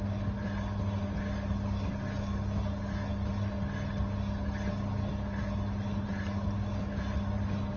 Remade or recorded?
recorded